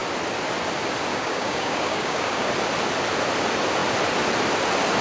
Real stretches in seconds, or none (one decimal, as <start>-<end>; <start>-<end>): 0.0-1.1; 2.5-5.0